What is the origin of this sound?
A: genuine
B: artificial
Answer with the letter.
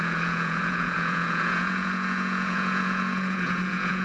B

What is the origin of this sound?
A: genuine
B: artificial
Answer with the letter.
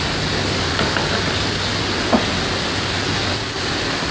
A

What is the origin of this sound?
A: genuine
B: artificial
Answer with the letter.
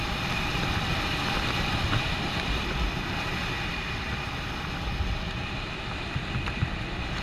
A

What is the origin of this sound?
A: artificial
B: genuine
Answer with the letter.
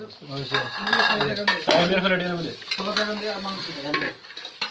B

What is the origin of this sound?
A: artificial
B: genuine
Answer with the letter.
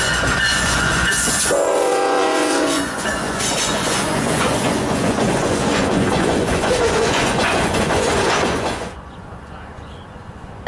A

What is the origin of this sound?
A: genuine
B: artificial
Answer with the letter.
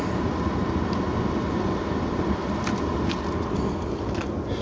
A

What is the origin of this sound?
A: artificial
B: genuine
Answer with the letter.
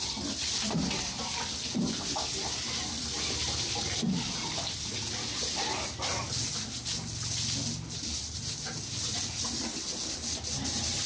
B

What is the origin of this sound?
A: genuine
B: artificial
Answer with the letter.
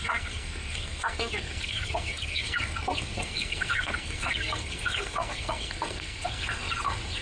B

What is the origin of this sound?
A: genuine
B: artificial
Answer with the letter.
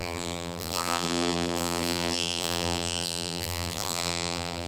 B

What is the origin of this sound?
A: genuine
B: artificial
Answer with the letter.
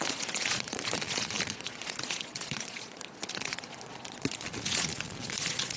B